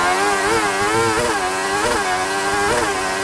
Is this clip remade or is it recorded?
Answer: recorded